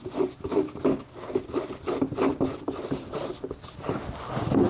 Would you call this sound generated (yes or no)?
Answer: no